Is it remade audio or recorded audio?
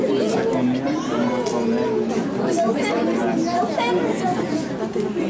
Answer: recorded